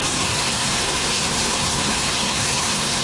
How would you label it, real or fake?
fake